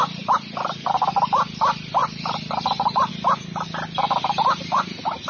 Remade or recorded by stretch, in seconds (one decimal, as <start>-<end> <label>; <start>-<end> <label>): 0.0-2.0 recorded; 2.0-3.1 remade; 3.1-5.3 recorded